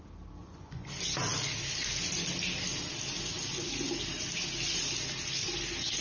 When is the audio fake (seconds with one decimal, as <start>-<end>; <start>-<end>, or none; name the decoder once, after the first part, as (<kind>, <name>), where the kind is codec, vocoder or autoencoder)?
0.4-0.9 (vocoder, Vocos)

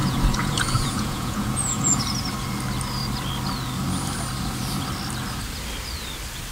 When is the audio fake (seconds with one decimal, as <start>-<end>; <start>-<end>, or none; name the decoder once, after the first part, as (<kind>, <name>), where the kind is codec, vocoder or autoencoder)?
0.0-2.0 (vocoder, Vocos)

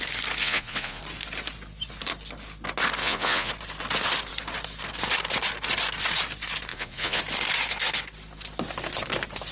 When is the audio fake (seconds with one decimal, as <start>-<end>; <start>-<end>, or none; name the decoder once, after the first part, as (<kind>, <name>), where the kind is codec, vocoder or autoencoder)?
0.4-1.0 (vocoder, Vocos); 3.0-3.5; 6.7-7.2